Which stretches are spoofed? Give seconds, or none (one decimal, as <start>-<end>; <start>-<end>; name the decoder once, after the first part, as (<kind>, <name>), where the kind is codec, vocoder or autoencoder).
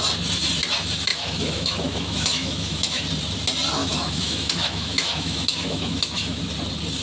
1.1-3.0 (autoencoder, DAC-VAE); 3.8-6.4